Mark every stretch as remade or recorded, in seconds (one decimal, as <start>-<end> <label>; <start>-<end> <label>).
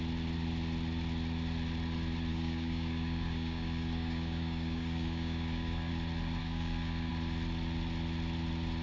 0.0-2.3 recorded; 2.3-5.9 remade; 5.9-6.4 recorded; 6.4-7.1 remade; 7.1-8.8 recorded